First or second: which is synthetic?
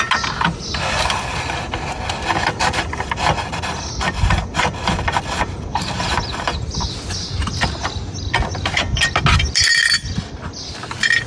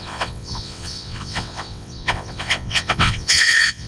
second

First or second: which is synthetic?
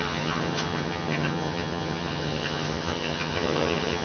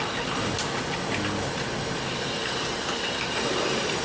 first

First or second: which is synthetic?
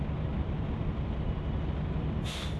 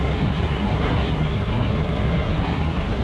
second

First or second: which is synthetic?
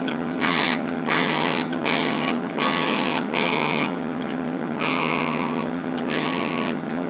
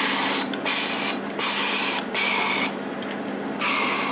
first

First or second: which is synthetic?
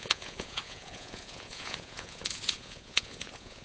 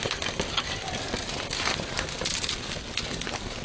first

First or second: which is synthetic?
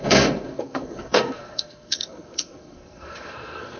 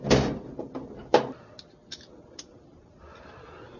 first